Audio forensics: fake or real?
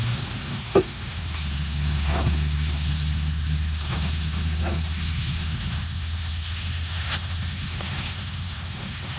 fake